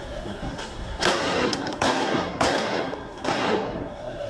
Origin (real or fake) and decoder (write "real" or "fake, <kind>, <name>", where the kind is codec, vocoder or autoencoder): fake, codec, SNAC